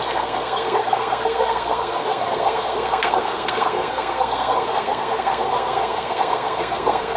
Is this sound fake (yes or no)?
yes